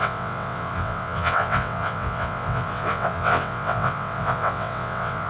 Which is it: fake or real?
fake